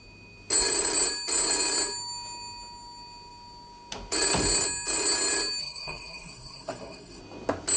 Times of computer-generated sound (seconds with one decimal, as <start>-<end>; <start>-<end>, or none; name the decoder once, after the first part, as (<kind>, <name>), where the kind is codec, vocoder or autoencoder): 5.6-7.2 (codec, SNAC)